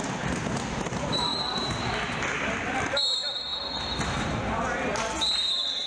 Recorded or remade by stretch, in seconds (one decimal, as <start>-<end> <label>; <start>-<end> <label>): 0.0-5.9 recorded